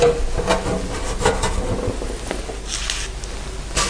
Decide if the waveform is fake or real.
real